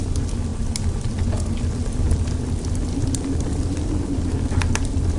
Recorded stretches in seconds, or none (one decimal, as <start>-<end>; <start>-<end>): 0.0-5.2